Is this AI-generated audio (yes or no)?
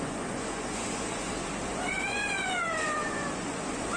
yes